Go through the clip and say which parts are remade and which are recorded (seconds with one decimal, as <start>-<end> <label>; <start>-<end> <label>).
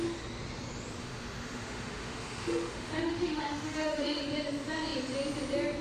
0.0-1.0 recorded; 1.0-4.2 remade; 4.2-5.8 recorded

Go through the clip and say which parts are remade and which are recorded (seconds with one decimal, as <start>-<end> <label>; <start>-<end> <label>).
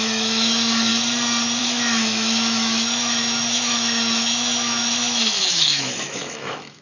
0.0-0.9 remade; 0.9-1.6 recorded; 1.6-6.8 remade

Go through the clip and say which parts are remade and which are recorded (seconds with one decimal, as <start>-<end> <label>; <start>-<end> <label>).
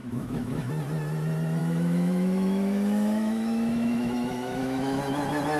0.0-0.7 remade; 0.7-1.6 recorded; 1.6-5.0 remade; 5.0-5.6 recorded